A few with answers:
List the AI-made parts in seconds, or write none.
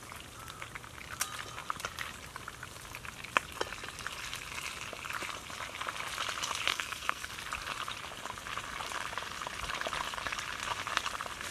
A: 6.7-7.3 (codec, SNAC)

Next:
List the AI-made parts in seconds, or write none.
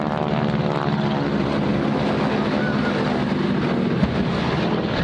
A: none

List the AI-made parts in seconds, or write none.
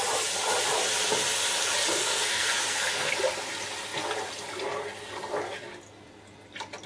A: 2.0-3.1 (codec, SNAC)